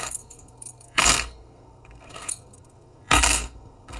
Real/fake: fake